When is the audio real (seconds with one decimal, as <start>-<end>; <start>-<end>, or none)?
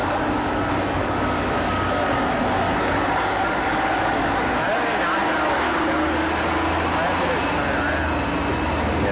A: 4.3-9.1